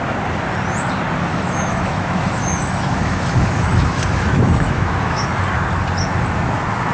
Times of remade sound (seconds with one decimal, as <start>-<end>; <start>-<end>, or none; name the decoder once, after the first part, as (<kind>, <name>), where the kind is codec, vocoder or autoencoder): 1.3-5.4 (autoencoder, DAC-VAE)